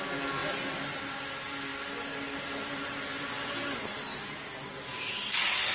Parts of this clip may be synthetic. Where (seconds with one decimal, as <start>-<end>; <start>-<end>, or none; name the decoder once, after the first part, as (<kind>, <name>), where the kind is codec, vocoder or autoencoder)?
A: none